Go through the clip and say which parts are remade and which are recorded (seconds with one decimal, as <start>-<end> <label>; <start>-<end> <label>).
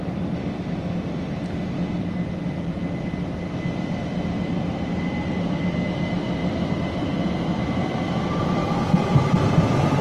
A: 0.0-10.0 recorded